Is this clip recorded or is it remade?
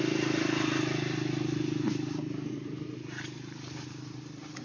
recorded